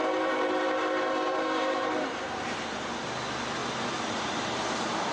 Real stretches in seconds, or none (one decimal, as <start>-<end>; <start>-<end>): 2.6-3.6